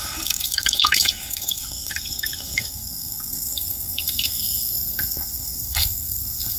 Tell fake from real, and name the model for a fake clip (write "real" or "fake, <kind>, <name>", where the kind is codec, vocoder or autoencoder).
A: fake, codec, SNAC